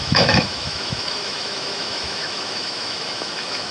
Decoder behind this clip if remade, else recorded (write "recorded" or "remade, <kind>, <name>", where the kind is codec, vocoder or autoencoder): remade, autoencoder, DAC-VAE